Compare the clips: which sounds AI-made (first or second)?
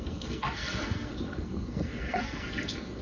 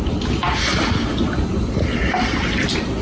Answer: first